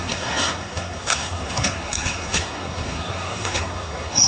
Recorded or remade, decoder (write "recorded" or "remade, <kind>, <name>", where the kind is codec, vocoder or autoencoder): remade, codec, SNAC